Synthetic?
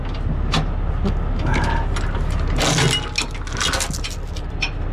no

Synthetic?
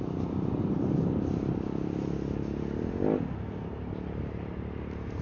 no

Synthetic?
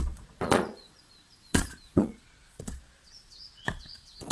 yes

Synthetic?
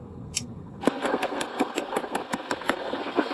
yes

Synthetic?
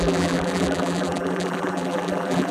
yes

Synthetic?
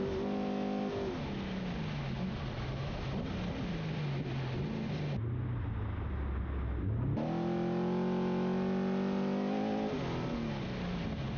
no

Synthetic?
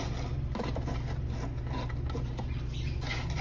no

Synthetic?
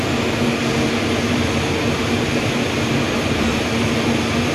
no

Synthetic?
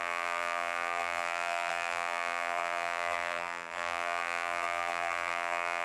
yes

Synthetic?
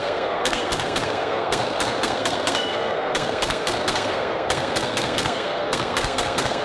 yes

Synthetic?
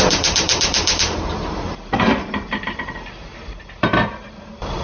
yes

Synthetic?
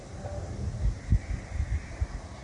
no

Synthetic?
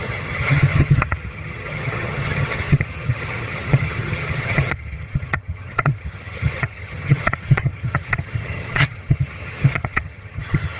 yes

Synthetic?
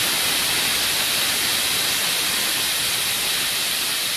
no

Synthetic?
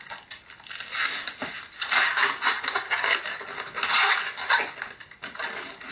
no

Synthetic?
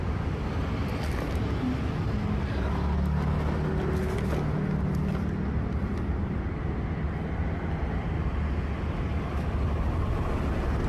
no